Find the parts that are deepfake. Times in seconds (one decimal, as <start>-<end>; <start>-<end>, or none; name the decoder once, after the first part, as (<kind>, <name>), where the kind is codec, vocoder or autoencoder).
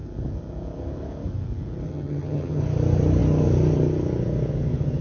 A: 1.9-2.6 (vocoder, HiFi-GAN)